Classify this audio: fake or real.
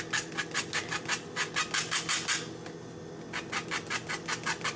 real